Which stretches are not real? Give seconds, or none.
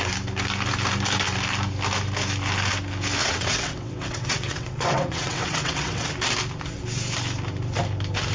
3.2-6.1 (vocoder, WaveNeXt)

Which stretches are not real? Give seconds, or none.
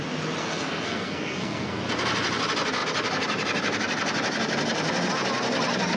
0.4-1.8 (codec, SNAC)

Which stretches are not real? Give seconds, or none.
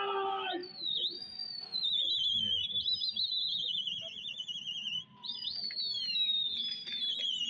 none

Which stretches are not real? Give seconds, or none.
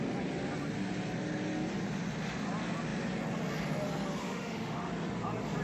4.2-4.9 (autoencoder, DAC-VAE)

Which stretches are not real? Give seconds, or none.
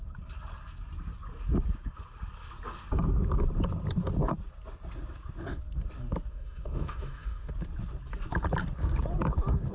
6.3-7.5 (autoencoder, DAC-VAE)